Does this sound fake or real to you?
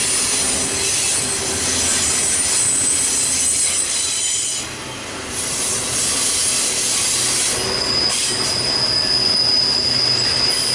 real